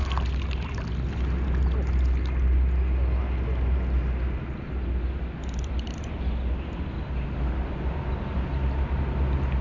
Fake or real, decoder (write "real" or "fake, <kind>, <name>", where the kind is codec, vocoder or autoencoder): real